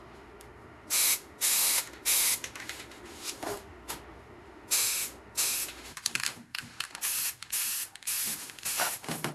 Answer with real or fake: fake